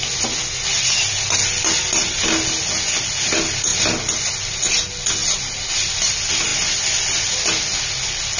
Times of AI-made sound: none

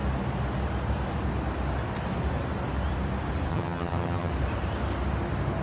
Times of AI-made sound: 3.5-4.3 (vocoder, HiFi-GAN)